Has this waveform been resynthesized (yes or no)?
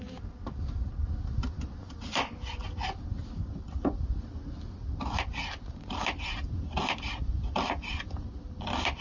no